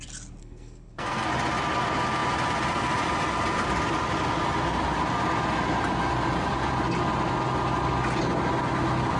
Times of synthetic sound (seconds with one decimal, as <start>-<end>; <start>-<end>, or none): 0.4-1.3